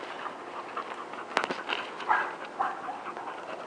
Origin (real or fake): real